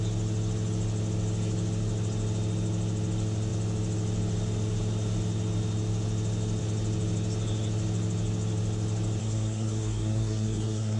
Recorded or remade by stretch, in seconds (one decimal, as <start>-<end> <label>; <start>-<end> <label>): 0.0-9.2 recorded; 9.2-11.0 remade